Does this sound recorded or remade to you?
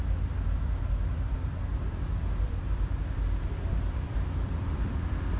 remade